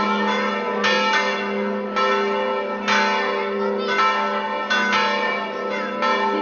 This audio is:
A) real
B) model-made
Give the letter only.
A